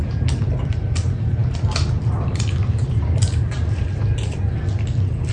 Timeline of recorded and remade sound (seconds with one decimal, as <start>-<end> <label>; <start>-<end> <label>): 0.0-5.3 recorded